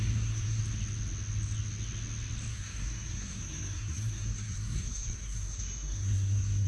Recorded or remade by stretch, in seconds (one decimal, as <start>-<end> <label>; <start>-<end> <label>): 0.0-0.6 remade; 0.6-2.5 recorded; 2.5-6.7 remade